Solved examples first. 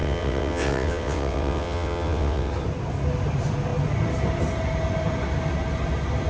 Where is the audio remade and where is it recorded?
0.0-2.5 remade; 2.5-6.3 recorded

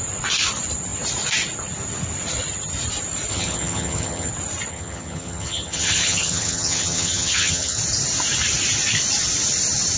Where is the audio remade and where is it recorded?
0.0-3.3 recorded; 3.3-4.3 remade; 4.3-4.7 recorded; 4.7-7.8 remade; 7.8-10.0 recorded

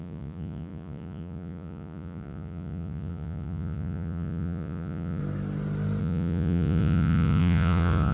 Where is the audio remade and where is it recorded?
0.0-5.2 remade; 5.2-6.0 recorded; 6.0-8.1 remade

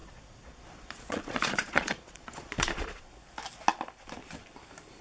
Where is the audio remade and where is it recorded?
0.0-3.0 remade; 3.0-5.0 recorded

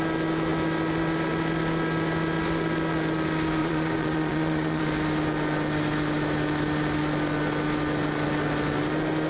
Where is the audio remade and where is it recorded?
0.0-3.6 recorded; 3.6-4.8 remade; 4.8-9.3 recorded

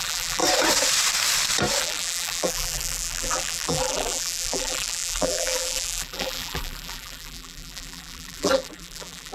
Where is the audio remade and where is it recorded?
0.0-0.4 remade; 0.4-1.8 recorded; 1.8-9.3 remade